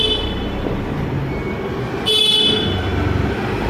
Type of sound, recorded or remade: recorded